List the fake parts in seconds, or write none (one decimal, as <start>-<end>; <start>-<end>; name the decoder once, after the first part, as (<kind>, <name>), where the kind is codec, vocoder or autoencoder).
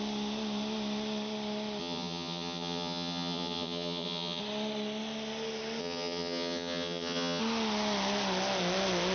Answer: 1.8-4.4 (vocoder, HiFi-GAN); 5.8-7.4